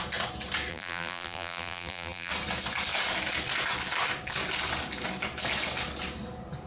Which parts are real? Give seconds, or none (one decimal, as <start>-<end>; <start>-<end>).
0.0-0.7; 2.3-6.7